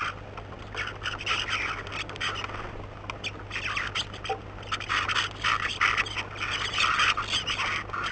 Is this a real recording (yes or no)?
yes